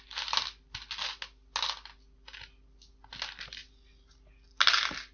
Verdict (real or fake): real